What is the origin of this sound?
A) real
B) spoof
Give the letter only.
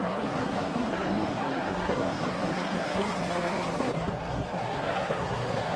B